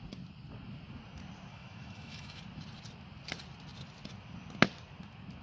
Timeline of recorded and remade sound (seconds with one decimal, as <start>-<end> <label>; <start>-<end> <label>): 0.0-1.5 recorded; 1.5-2.4 remade; 2.4-5.4 recorded